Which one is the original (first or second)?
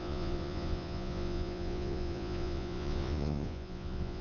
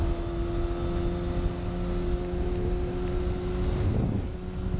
second